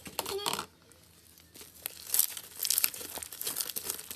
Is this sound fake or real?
real